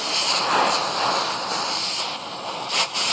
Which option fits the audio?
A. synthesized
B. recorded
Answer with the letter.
B